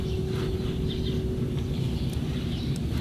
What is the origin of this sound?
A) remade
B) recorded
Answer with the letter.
B